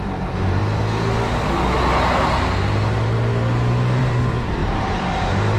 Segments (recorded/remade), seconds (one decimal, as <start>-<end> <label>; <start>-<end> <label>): 0.0-0.6 remade; 0.6-4.0 recorded; 4.0-5.6 remade